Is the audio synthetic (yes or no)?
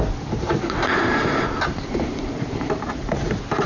yes